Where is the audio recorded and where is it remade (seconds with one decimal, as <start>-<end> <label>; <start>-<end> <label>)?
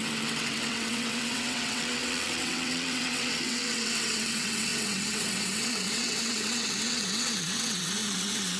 0.0-8.6 remade